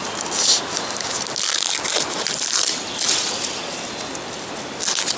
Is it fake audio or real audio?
real